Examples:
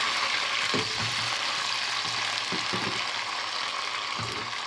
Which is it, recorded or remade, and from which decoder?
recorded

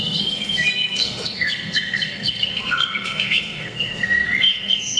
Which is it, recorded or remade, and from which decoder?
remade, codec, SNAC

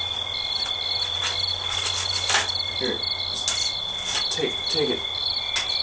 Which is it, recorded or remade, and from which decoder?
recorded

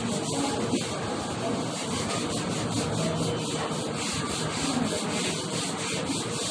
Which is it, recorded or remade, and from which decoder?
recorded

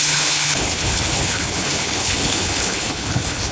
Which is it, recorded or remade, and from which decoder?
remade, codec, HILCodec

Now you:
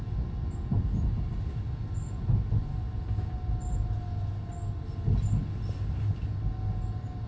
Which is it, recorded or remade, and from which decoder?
recorded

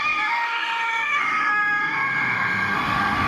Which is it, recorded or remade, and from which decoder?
remade, autoencoder, DAC-VAE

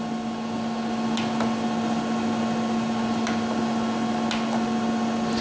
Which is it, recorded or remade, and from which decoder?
recorded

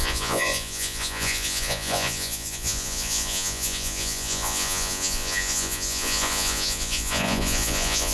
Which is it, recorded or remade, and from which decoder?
remade, vocoder, Vocos